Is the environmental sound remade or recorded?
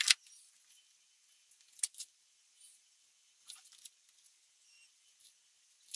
recorded